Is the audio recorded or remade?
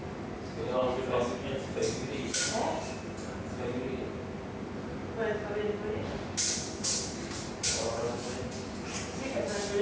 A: recorded